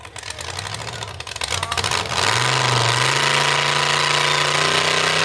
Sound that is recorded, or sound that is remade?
recorded